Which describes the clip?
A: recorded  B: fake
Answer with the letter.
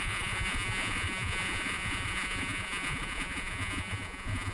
B